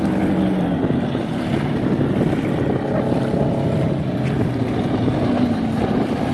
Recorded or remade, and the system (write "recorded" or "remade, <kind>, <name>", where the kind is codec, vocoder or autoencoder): recorded